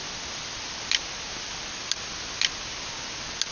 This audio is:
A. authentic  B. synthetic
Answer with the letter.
A